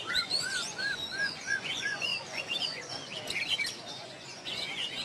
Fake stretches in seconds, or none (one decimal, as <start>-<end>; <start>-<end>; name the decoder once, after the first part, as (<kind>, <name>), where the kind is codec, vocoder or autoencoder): 0.0-3.1 (vocoder, Vocos); 3.8-5.0